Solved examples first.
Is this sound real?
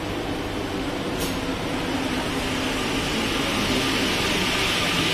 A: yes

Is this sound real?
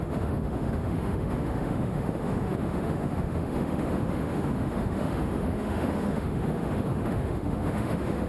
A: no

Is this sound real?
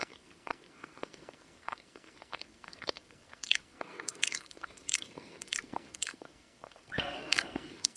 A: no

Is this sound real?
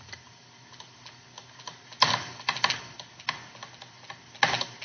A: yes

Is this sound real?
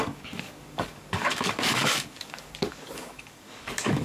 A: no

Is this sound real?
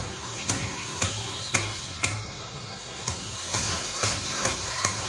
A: no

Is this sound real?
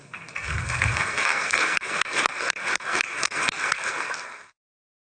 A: no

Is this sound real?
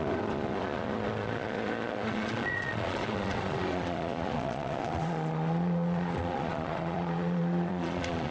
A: no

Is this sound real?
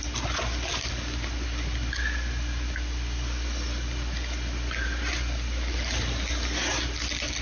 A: yes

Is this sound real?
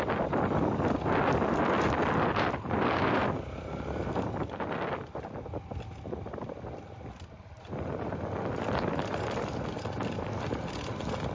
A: no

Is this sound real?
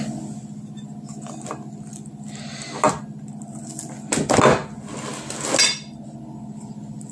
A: yes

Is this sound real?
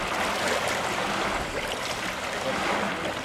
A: yes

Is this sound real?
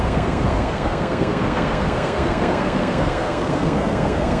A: no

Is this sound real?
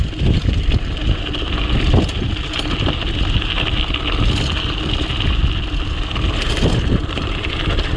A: yes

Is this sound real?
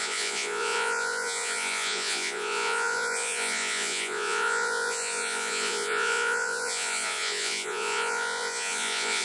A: no